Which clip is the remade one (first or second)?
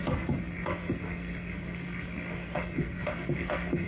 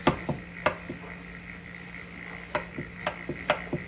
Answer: first